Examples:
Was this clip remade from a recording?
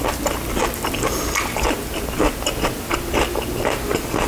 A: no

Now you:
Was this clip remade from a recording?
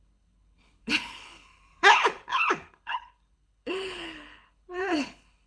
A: yes